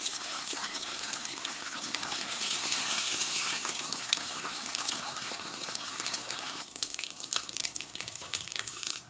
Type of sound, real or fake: fake